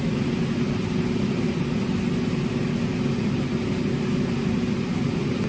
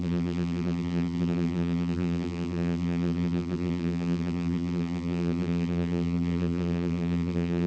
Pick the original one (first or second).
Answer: first